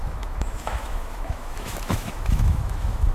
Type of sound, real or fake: fake